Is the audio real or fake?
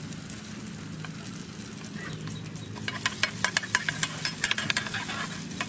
real